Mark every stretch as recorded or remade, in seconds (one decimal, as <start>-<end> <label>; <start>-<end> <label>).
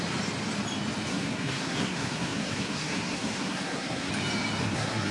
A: 0.0-1.1 recorded; 1.1-4.1 remade; 4.1-4.6 recorded; 4.6-5.1 remade